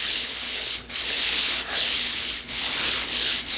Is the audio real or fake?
fake